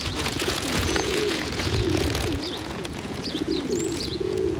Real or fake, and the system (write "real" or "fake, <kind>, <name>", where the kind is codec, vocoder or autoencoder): fake, vocoder, Vocos